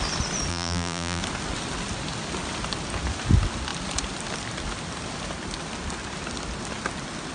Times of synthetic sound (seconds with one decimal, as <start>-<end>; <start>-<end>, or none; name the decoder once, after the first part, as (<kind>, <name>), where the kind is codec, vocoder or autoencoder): 0.5-1.2 (vocoder, BigVGAN v2)